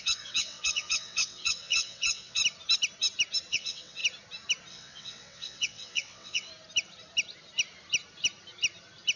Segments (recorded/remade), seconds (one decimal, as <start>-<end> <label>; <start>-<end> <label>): 0.0-2.4 remade; 2.4-3.5 recorded; 3.5-4.0 remade; 4.0-4.7 recorded; 4.7-6.5 remade; 6.5-9.2 recorded